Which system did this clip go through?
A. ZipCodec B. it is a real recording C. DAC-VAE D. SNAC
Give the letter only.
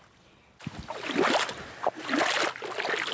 B